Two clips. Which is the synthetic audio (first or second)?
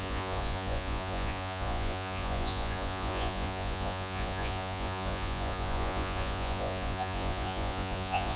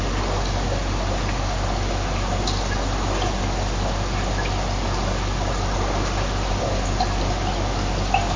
first